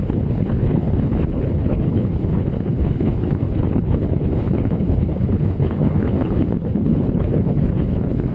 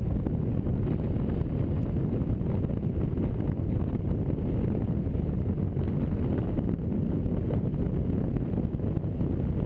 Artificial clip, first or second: first